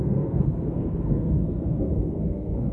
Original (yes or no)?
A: no